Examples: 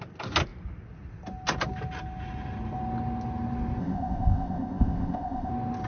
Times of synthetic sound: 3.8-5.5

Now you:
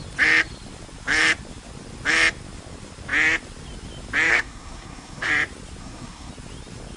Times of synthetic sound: 4.3-5.3; 5.8-6.3

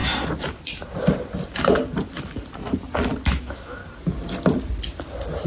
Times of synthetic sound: 3.3-3.8